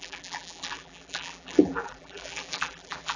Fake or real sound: fake